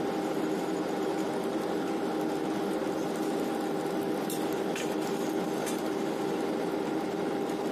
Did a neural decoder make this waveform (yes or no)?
no